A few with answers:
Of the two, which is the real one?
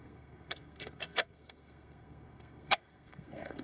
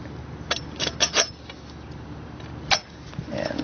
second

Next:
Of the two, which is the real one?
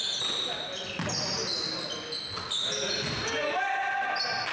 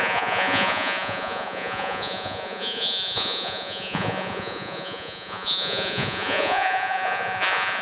first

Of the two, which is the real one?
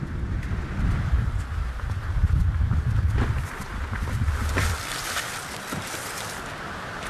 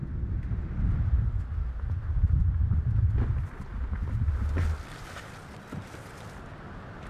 second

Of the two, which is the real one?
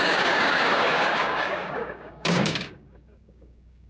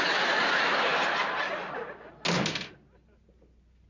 second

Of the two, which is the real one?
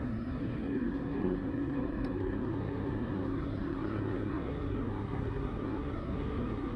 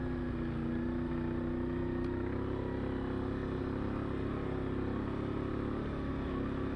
second